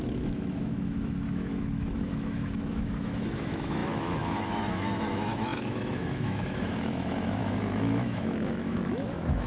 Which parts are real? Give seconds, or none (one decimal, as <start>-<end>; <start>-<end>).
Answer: none